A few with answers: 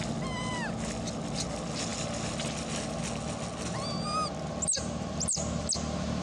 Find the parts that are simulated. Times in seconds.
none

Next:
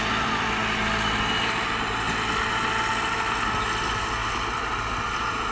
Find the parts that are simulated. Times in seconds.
none

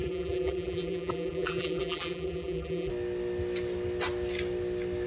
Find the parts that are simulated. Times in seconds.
0.0-2.9 (vocoder, BigVGAN v2)

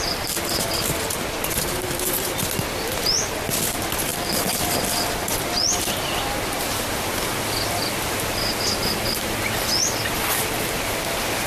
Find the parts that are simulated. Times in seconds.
4.1-4.8 (vocoder, BigVGAN v2)

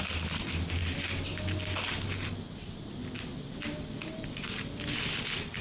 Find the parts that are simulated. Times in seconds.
none